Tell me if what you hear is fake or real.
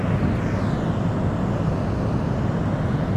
real